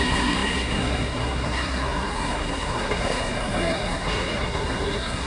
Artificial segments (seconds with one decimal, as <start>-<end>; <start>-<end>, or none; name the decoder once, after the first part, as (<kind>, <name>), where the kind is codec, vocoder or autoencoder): 0.0-5.3 (codec, SNAC)